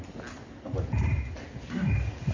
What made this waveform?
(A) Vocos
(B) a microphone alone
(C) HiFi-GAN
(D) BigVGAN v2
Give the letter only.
B